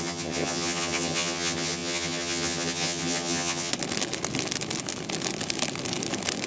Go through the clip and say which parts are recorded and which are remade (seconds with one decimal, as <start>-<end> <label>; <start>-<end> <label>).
0.0-3.7 remade; 3.7-6.5 recorded